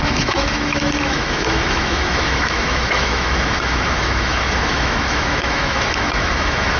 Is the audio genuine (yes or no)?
no